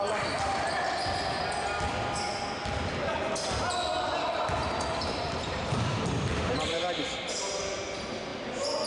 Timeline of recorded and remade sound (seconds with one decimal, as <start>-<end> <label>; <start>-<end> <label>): 0.0-4.6 recorded; 4.6-7.0 remade; 7.0-8.9 recorded